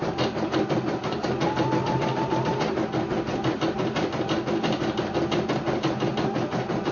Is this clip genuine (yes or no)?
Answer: yes